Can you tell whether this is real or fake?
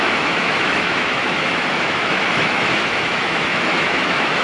fake